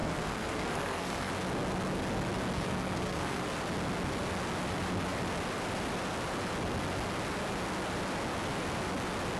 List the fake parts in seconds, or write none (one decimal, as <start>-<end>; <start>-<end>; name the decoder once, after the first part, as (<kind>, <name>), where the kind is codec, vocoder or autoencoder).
0.0-1.3 (codec, SNAC); 2.5-3.4